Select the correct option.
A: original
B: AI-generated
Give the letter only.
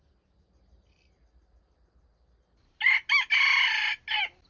A